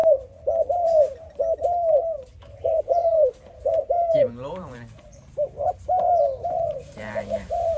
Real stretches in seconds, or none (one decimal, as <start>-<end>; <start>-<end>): 0.0-0.7